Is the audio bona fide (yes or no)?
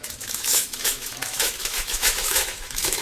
no